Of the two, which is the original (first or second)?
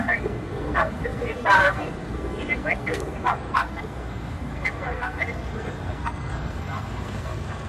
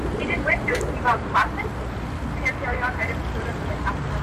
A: second